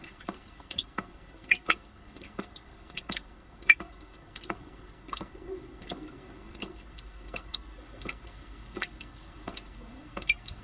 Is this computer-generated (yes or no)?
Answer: yes